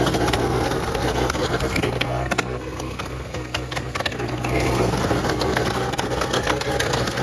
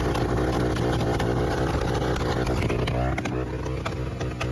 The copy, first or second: first